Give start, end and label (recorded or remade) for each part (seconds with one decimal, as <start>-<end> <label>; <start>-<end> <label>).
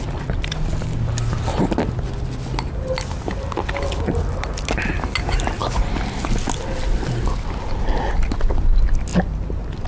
0.0-9.9 recorded